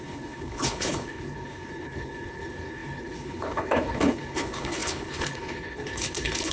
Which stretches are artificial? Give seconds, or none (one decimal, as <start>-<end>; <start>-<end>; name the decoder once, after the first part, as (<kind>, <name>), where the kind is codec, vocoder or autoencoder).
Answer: 0.0-6.5 (codec, HILCodec)